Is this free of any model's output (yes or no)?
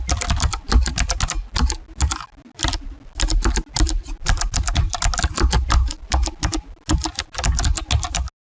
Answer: yes